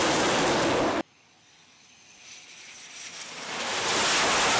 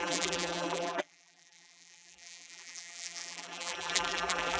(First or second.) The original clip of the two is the first